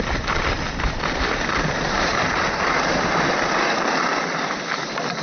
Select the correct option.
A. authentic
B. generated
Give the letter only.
A